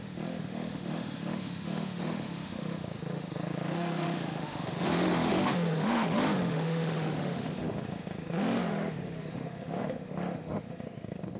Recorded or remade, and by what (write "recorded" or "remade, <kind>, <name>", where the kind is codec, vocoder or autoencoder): remade, autoencoder, DAC-VAE